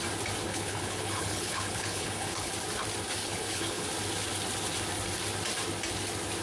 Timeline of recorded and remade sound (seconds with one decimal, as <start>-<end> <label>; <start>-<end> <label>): 0.0-0.5 recorded; 0.5-2.5 remade; 2.5-3.2 recorded; 3.2-3.9 remade; 3.9-6.4 recorded